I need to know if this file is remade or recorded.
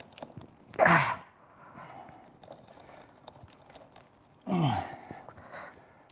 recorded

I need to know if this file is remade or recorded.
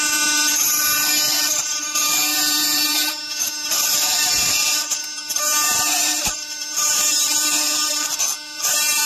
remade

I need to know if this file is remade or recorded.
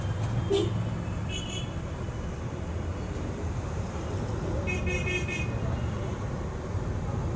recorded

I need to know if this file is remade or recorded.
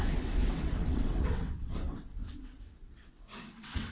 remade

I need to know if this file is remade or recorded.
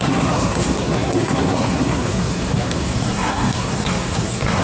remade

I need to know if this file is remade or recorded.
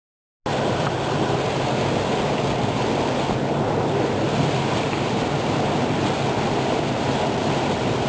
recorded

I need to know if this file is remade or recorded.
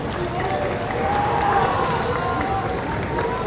recorded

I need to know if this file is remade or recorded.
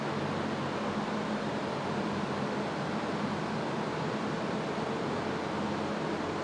recorded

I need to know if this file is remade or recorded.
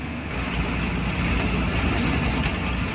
recorded